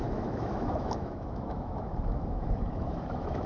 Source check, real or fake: fake